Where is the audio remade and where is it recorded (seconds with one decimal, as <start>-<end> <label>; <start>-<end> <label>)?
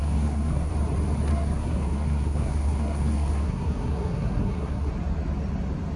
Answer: 0.0-0.7 remade; 0.7-1.3 recorded; 1.3-4.9 remade; 4.9-6.0 recorded